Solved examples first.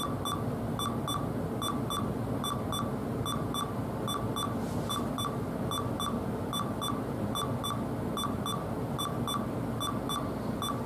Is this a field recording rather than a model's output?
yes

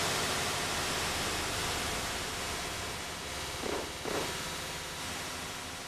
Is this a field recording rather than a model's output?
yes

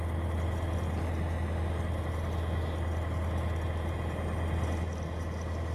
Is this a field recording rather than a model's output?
yes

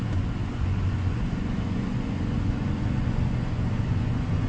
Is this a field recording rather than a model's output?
no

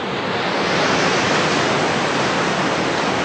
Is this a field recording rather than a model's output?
yes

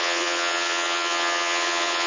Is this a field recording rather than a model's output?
no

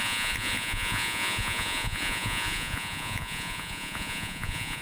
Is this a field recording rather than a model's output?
no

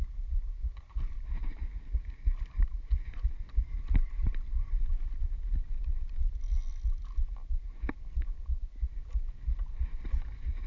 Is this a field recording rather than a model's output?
yes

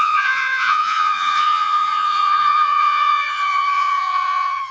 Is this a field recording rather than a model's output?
no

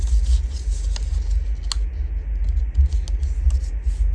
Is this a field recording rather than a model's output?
yes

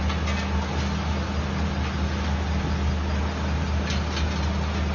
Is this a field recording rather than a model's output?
yes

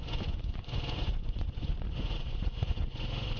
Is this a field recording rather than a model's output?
no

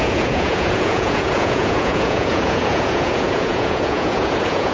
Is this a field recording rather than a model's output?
no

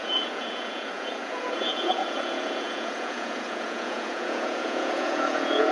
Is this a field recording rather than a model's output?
no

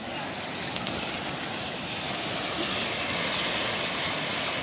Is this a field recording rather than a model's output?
yes